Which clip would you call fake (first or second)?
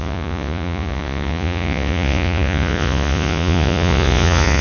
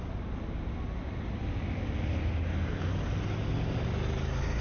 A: first